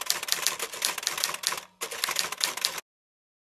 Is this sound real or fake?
real